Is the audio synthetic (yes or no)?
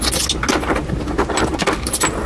no